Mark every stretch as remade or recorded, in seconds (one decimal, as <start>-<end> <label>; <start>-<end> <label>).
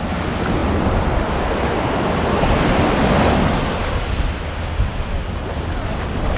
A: 0.0-6.4 recorded